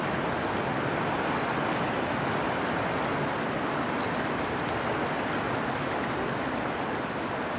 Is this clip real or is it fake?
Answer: real